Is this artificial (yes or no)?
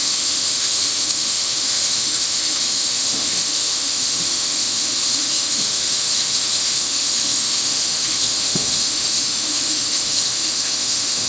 yes